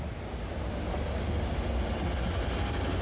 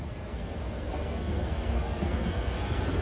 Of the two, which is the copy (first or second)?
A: second